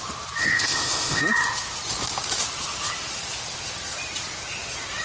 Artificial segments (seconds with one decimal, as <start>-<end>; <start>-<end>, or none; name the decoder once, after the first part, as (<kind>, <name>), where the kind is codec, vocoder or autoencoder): 0.4-1.2 (codec, ZipCodec)